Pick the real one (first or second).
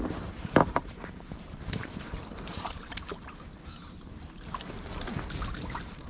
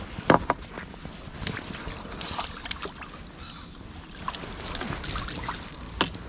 second